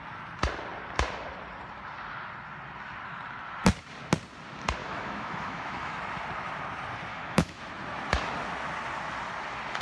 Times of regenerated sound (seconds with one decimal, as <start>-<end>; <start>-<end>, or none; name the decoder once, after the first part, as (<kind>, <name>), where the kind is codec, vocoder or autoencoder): 4.8-6.0 (autoencoder, DAC-VAE); 7.1-7.6